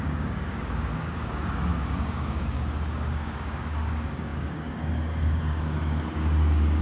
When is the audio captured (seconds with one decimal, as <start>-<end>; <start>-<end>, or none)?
none